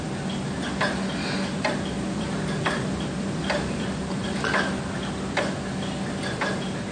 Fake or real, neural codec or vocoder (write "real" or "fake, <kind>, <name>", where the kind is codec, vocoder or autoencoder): real